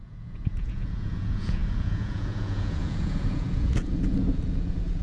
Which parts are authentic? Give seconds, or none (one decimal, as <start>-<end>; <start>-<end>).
none